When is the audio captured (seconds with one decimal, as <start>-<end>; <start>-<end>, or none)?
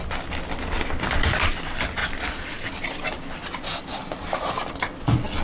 0.0-0.5; 1.4-4.0; 4.7-5.4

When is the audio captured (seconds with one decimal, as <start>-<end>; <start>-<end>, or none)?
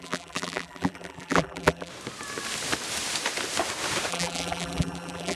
1.9-4.1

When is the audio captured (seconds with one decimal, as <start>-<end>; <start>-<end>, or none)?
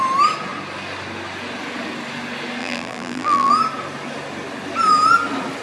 0.0-2.6; 3.5-5.6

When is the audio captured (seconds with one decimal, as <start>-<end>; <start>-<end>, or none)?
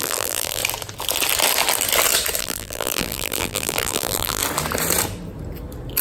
0.6-2.4; 4.4-6.0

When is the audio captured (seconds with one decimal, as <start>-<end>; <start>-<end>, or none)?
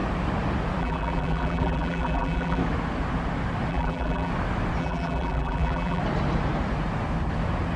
0.0-0.8; 2.6-3.7; 4.3-4.8; 6.0-7.8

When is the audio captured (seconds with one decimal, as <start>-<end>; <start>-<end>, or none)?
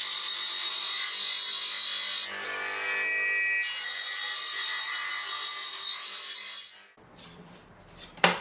0.0-8.4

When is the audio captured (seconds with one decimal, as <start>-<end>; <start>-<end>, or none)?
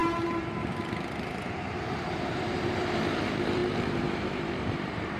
none